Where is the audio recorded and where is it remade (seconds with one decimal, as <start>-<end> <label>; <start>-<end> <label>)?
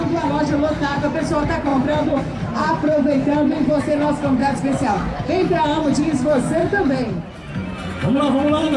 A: 0.0-1.7 recorded; 1.7-3.8 remade; 3.8-4.4 recorded; 4.4-5.2 remade; 5.2-6.6 recorded; 6.6-7.5 remade; 7.5-8.8 recorded